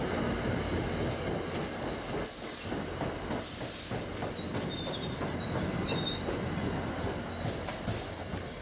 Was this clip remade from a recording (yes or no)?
no